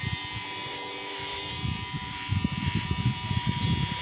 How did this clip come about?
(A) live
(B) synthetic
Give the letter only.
B